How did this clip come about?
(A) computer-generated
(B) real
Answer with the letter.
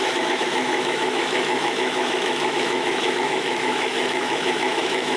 A